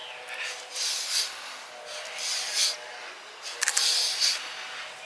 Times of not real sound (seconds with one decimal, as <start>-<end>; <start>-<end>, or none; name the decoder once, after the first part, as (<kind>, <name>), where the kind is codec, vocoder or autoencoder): none